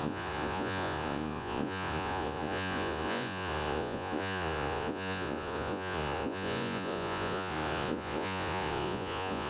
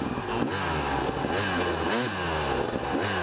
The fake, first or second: first